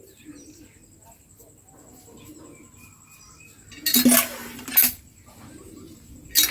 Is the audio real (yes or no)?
yes